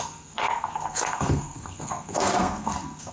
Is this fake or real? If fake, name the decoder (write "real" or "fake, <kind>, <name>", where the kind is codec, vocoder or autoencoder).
fake, codec, SNAC